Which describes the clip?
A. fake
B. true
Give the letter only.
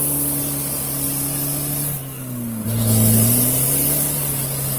B